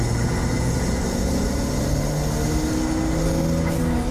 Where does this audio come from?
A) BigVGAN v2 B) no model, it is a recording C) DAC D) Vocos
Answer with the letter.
B